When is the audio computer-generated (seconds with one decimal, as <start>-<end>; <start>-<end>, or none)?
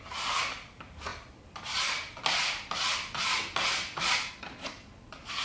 none